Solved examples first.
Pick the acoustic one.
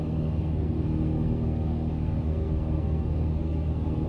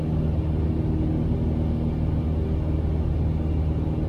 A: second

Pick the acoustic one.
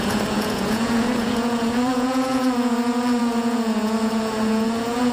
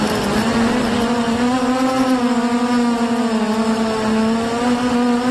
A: second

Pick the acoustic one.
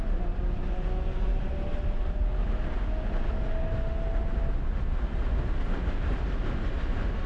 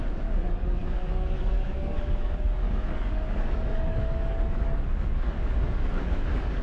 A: first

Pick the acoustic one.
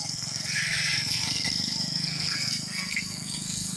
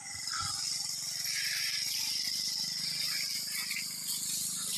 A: second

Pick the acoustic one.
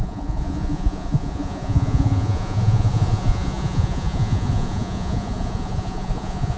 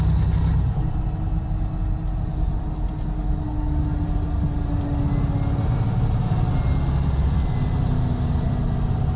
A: second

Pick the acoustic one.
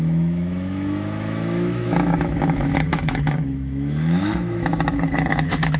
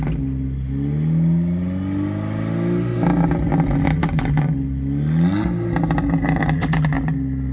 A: second